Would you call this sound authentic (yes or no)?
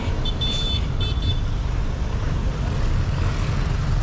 no